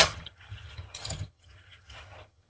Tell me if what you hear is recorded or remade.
remade